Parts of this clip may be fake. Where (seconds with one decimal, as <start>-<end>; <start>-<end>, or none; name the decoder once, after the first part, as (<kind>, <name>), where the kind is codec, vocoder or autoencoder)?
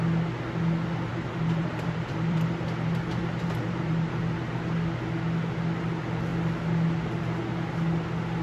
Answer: 1.1-2.6 (vocoder, BigVGAN v2); 3.2-4.2